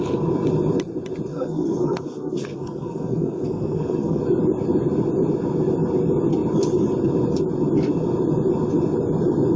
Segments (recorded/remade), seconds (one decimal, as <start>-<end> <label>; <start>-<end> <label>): 0.0-1.3 recorded; 1.3-4.2 remade; 4.2-9.6 recorded